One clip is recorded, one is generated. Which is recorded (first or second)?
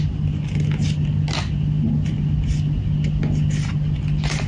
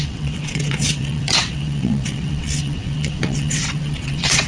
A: first